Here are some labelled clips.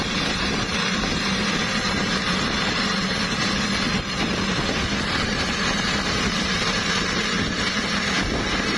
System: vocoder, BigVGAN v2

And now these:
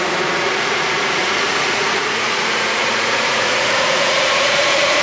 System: vocoder, Vocos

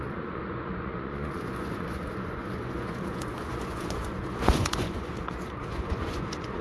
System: vocoder, Vocos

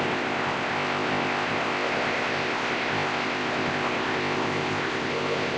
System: codec, ZipCodec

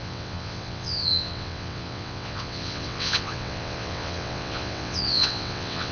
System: vocoder, WaveNeXt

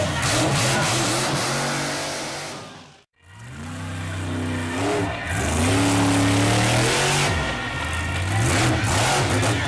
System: none